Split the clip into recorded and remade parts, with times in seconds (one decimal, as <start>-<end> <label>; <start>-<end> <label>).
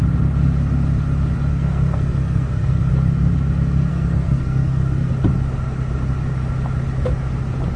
0.0-1.5 recorded; 1.5-2.9 remade; 2.9-3.9 recorded; 3.9-5.1 remade; 5.1-7.8 recorded